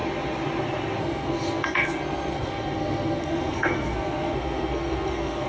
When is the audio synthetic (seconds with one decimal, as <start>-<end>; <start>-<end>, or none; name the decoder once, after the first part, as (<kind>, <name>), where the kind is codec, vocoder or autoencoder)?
1.0-5.5 (codec, SNAC)